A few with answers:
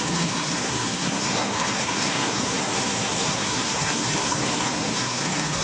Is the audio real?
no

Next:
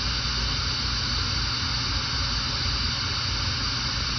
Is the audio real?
yes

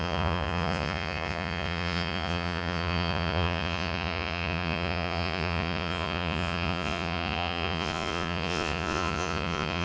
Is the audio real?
no